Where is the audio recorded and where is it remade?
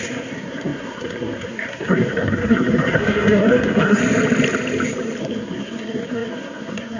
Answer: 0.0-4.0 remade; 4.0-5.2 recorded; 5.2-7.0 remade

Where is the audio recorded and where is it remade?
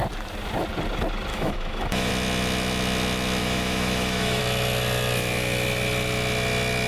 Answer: 0.0-1.3 recorded; 1.3-2.1 remade; 2.1-3.4 recorded; 3.4-4.4 remade; 4.4-6.9 recorded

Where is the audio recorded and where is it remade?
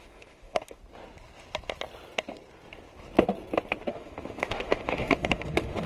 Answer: 0.0-0.8 remade; 0.8-3.9 recorded; 3.9-5.9 remade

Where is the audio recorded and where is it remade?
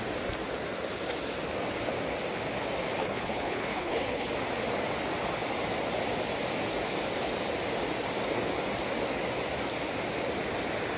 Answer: 0.0-3.0 recorded; 3.0-4.3 remade; 4.3-11.0 recorded